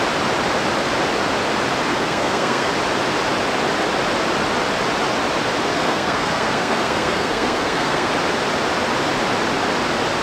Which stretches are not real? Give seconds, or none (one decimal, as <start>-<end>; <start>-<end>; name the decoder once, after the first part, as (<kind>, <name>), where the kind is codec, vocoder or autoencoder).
1.9-2.7 (codec, SNAC); 5.7-8.1